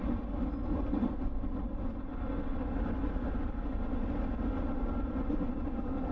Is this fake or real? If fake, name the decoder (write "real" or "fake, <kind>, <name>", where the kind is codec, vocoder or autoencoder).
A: real